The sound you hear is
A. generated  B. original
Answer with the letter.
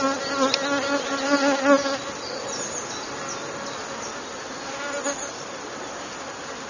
B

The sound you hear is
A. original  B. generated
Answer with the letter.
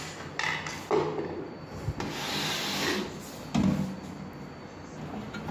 A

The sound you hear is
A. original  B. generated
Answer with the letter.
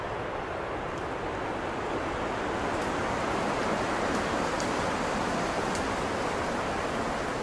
A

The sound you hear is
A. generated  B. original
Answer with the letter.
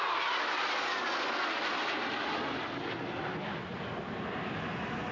B